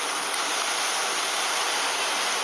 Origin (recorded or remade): recorded